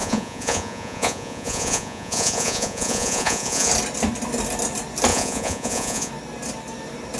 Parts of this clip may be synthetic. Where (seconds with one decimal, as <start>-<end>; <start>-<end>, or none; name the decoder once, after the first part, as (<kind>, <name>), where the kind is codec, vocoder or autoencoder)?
0.0-3.7 (vocoder, Vocos); 5.1-6.1